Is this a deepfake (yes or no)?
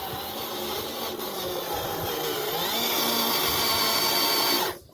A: no